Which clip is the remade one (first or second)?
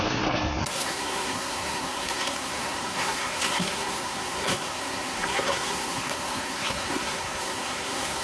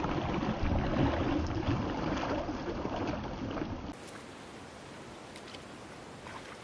first